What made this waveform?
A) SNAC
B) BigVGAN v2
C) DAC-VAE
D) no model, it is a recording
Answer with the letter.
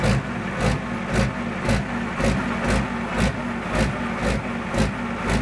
D